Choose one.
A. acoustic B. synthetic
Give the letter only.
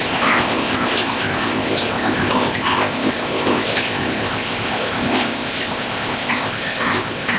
B